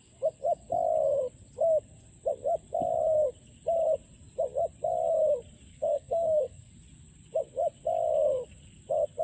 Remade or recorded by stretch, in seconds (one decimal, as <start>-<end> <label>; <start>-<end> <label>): 0.0-5.7 recorded; 5.7-6.7 remade; 6.7-9.2 recorded